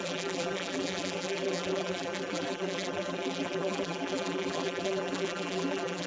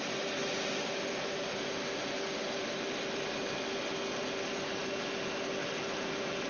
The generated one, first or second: first